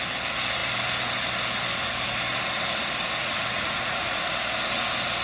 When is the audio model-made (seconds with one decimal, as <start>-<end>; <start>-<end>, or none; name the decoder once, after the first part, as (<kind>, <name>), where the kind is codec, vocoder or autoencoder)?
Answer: 3.2-4.2 (vocoder, Vocos)

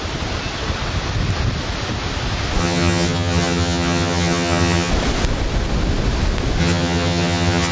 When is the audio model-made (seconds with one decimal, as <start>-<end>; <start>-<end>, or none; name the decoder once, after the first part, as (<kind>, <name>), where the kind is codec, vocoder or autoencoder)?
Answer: 2.6-4.9 (vocoder, HiFi-GAN); 6.6-7.7

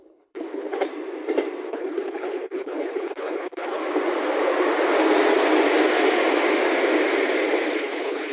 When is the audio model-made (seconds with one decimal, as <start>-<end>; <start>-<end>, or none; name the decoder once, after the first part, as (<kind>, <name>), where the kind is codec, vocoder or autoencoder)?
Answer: 0.0-0.9 (codec, HILCodec); 1.7-3.8; 7.7-8.3

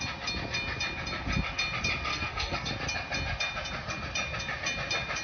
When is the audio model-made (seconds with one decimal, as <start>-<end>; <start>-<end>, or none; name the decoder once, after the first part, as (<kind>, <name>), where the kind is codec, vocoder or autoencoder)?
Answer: 2.1-2.7 (codec, SNAC)

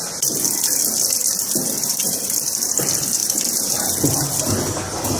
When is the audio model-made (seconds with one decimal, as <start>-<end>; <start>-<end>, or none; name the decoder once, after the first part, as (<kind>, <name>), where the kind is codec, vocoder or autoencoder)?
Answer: none

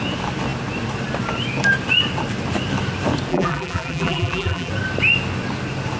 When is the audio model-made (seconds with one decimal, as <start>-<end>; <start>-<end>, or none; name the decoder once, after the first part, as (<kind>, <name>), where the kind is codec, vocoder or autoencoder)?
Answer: 3.3-4.7 (vocoder, BigVGAN v2)

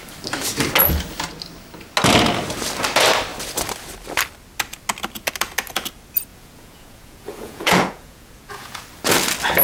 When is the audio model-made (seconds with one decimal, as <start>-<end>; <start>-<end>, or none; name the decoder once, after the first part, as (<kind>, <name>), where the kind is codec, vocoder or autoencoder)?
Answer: 6.3-8.8 (vocoder, Vocos)